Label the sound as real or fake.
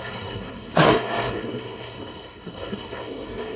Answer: fake